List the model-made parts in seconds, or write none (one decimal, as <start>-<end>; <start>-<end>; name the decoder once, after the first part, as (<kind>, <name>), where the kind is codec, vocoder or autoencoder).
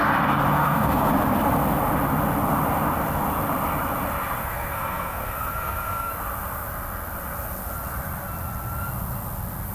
0.5-1.1 (codec, SNAC); 4.4-6.1